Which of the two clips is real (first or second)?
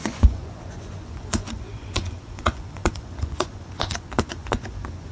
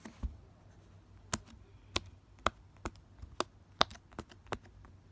second